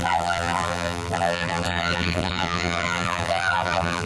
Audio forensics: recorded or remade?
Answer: remade